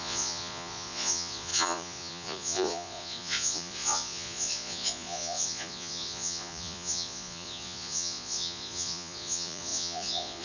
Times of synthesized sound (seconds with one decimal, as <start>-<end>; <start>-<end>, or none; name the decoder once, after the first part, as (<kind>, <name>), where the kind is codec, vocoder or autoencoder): 0.0-10.4 (vocoder, Vocos)